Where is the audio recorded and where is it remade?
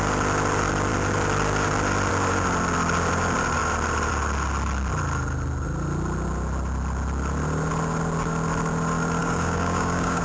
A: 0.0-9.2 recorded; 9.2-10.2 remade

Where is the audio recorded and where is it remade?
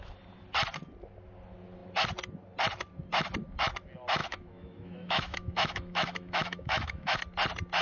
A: 0.0-4.2 recorded; 4.2-7.2 remade; 7.2-7.8 recorded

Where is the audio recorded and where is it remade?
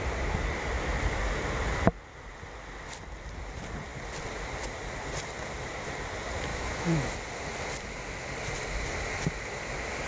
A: 0.0-6.5 recorded; 6.5-7.1 remade; 7.1-10.1 recorded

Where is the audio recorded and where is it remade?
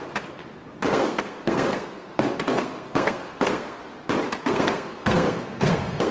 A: 0.0-0.4 remade; 0.4-0.9 recorded; 0.9-3.8 remade; 3.8-4.4 recorded; 4.4-6.1 remade